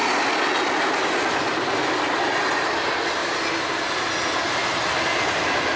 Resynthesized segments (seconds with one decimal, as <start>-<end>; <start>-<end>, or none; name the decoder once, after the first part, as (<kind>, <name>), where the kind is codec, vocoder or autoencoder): 3.2-4.1 (vocoder, BigVGAN v2)